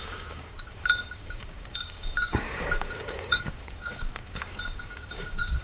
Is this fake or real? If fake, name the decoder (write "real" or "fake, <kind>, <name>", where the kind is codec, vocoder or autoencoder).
fake, codec, DAC